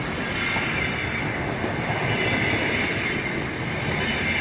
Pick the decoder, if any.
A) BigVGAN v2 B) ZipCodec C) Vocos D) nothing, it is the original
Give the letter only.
D